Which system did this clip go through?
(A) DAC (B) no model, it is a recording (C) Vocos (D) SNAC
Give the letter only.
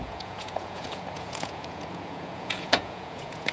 C